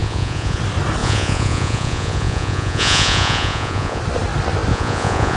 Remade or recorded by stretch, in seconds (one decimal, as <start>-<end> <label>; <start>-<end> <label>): 0.0-0.6 remade; 0.6-1.0 recorded; 1.0-4.0 remade; 4.0-4.7 recorded; 4.7-5.4 remade